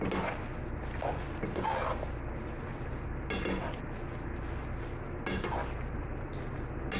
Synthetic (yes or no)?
no